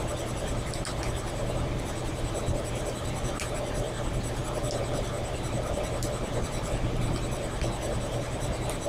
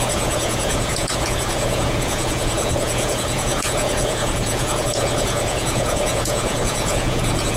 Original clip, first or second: first